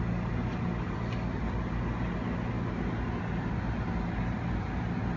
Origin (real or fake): real